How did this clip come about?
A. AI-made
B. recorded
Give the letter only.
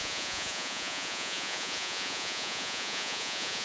A